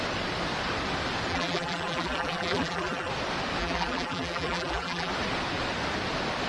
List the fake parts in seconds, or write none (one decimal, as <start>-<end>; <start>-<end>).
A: 1.3-3.1; 3.6-5.1